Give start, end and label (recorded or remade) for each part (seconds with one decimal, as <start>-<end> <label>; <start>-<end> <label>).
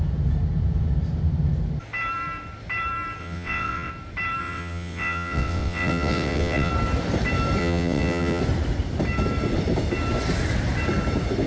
0.0-3.2 recorded; 3.2-3.9 remade; 3.9-4.4 recorded; 4.4-6.7 remade; 6.7-7.6 recorded; 7.6-8.4 remade; 8.4-11.5 recorded